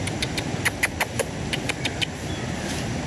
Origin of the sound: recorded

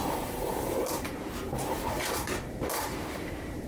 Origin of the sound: remade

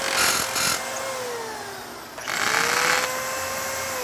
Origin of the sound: recorded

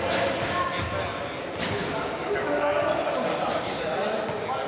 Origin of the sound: recorded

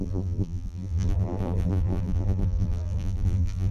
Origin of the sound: remade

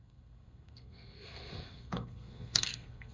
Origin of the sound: remade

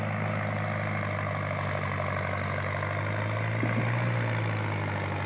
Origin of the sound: recorded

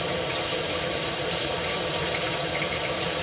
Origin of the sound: remade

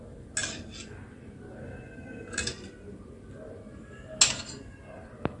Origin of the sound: recorded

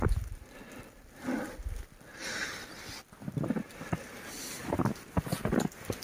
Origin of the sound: recorded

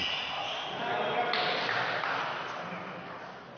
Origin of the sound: recorded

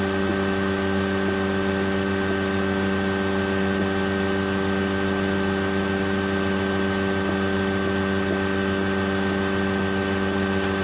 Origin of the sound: recorded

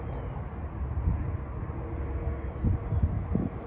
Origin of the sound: recorded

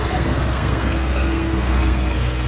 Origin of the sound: remade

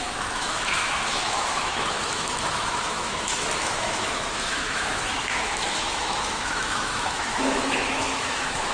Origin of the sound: remade